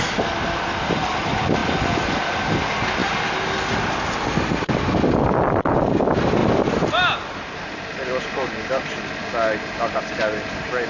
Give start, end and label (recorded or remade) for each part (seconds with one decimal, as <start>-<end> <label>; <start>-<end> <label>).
0.0-1.6 recorded; 1.6-2.6 remade; 2.6-6.4 recorded; 6.4-8.7 remade; 8.7-10.9 recorded